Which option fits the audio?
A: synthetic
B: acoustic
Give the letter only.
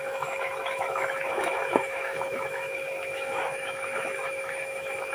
A